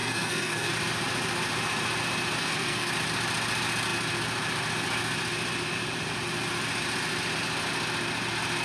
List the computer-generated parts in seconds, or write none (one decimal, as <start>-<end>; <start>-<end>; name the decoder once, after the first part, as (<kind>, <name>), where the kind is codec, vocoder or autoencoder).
0.0-0.7 (codec, SNAC); 2.4-2.9